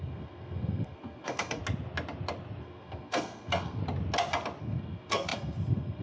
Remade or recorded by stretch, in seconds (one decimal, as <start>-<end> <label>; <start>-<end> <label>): 0.0-1.6 remade; 1.6-2.6 recorded; 2.6-3.8 remade; 3.8-4.6 recorded; 4.6-6.0 remade